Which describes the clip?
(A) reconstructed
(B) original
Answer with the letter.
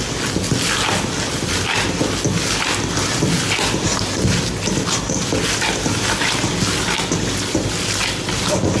B